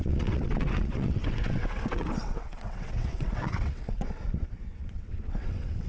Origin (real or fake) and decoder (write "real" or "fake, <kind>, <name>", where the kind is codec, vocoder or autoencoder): fake, vocoder, WaveNeXt